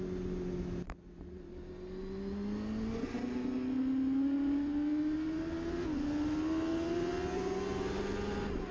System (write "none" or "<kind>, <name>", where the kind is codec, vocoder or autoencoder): none